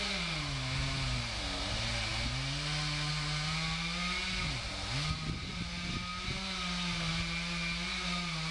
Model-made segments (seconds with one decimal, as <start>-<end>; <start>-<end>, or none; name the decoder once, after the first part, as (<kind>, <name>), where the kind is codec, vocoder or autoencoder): none